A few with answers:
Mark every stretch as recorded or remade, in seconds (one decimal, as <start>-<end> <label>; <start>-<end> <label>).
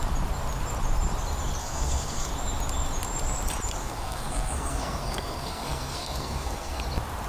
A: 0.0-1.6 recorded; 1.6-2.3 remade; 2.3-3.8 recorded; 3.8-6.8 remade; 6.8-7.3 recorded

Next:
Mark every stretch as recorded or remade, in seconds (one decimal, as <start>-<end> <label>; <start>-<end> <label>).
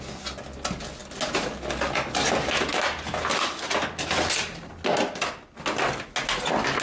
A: 0.0-6.8 recorded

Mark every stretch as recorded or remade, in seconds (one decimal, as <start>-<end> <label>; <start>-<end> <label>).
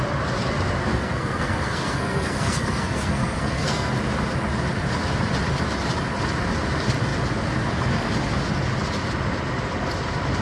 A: 0.0-0.9 recorded; 0.9-3.9 remade; 3.9-10.4 recorded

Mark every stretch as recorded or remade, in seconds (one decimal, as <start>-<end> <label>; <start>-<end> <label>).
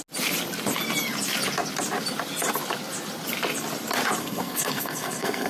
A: 0.0-4.2 recorded; 4.2-5.5 remade